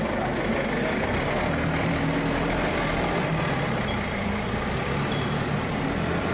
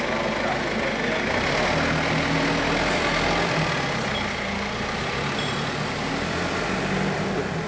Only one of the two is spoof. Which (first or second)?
first